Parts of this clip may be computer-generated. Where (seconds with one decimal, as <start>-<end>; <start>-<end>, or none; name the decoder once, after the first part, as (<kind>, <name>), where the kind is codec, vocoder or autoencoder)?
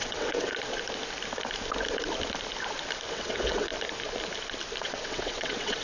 0.0-0.5 (vocoder, WaveNeXt); 3.1-3.7; 4.8-5.8